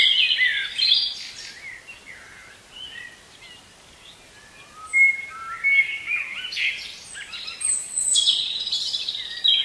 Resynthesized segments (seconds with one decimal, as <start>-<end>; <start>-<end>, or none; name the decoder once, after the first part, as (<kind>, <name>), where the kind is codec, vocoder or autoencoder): 7.8-8.7 (vocoder, Vocos)